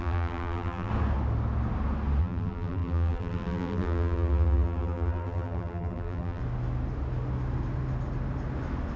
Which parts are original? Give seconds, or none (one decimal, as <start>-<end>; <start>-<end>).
0.9-2.2; 6.4-9.0